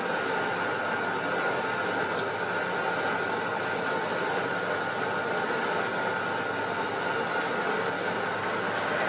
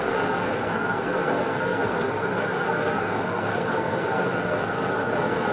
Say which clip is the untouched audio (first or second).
first